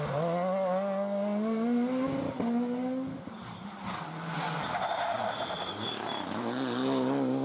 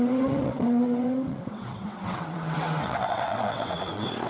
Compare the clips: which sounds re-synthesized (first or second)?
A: second